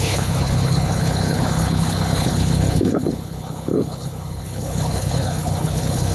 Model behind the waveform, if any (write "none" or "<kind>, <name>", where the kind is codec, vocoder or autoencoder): codec, HILCodec